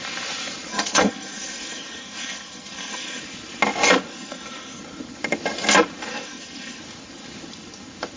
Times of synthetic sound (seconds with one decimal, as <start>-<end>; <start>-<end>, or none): 0.7-3.2; 4.1-4.8; 6.1-6.8